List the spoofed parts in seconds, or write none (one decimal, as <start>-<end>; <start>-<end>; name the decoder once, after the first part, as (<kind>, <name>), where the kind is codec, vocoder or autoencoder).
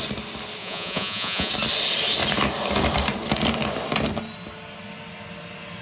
0.6-1.5 (vocoder, Vocos)